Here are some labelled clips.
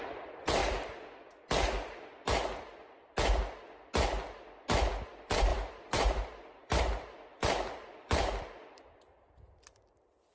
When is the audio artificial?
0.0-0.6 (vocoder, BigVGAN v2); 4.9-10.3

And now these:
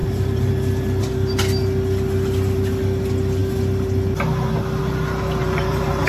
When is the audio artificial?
0.0-0.5 (vocoder, BigVGAN v2); 5.4-6.1

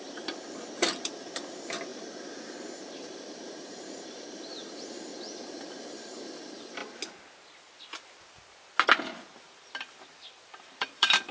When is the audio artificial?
0.0-5.1 (vocoder, BigVGAN v2); 5.8-6.8; 10.6-11.3